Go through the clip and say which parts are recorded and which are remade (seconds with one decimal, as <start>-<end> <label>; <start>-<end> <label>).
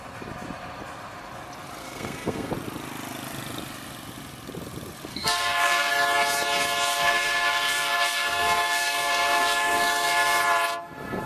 0.0-1.8 recorded; 1.8-2.5 remade; 2.5-5.1 recorded; 5.1-5.9 remade; 5.9-6.9 recorded; 6.9-10.4 remade; 10.4-11.3 recorded